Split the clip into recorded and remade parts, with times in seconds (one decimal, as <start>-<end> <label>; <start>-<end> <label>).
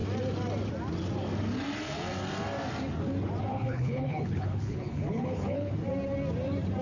0.0-3.5 recorded; 3.5-5.7 remade; 5.7-6.8 recorded